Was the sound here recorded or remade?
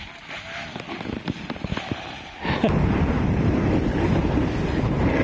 recorded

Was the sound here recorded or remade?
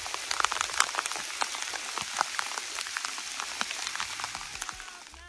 recorded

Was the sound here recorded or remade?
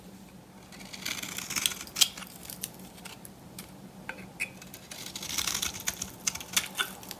recorded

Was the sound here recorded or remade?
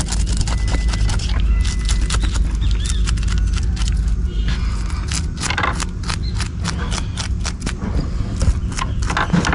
recorded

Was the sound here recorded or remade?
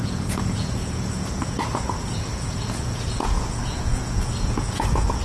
remade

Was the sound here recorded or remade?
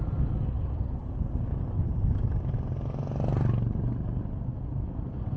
recorded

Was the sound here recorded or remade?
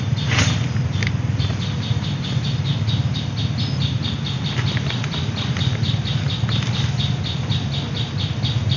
recorded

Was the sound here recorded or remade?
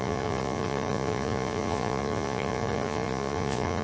remade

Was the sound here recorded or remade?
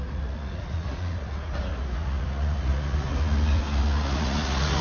remade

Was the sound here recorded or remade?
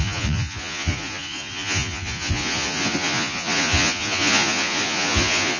remade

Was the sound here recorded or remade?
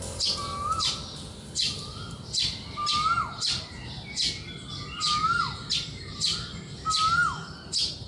recorded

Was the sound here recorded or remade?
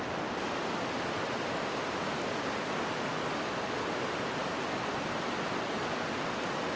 recorded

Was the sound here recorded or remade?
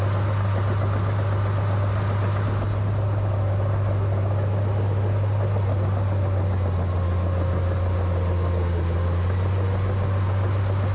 recorded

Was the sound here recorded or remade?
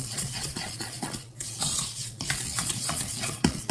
remade